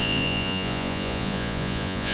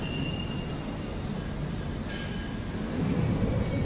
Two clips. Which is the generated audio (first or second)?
first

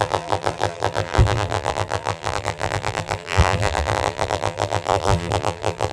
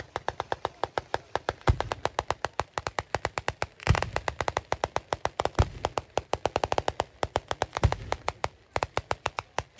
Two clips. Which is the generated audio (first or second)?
first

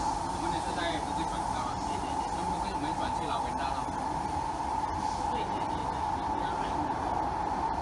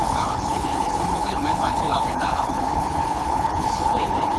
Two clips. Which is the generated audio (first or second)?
second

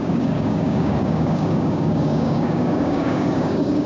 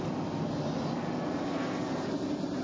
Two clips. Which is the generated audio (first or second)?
first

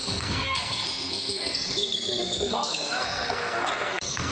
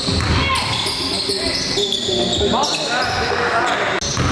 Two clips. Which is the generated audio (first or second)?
first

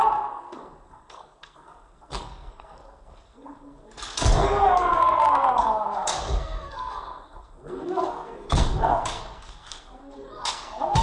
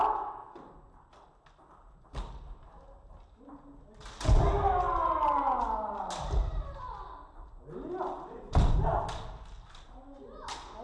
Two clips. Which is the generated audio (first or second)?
first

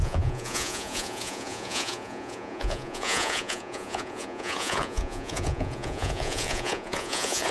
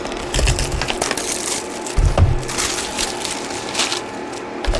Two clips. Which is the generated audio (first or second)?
first